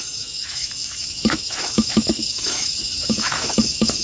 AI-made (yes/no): yes